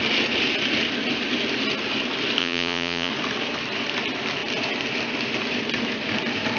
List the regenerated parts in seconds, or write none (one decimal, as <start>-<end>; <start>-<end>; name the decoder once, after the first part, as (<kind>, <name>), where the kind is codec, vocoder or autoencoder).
2.4-3.1 (vocoder, Vocos)